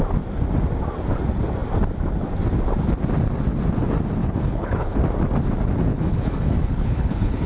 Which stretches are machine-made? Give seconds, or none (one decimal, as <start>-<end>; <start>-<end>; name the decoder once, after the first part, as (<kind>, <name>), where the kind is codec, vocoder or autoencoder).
4.2-5.0 (codec, HILCodec); 5.9-7.5